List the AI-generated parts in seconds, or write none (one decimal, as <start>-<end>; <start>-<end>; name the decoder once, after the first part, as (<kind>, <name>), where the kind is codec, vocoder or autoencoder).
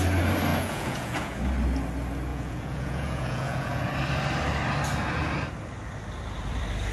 0.5-1.4 (vocoder, Vocos); 2.3-3.9